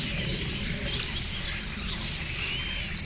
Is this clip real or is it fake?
real